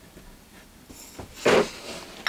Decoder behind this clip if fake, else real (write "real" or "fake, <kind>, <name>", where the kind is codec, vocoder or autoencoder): real